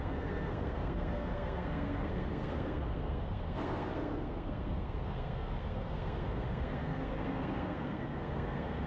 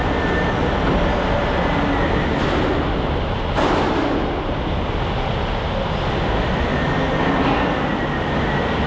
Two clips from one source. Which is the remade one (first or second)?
first